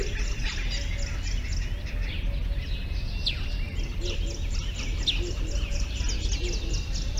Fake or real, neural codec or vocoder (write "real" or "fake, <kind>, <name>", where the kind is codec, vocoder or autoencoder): real